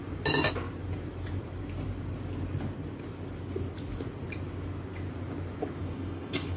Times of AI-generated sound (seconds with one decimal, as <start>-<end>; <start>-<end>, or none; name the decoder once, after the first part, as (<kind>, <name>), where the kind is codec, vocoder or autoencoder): 5.8-6.6 (codec, DAC)